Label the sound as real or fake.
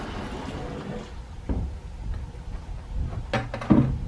real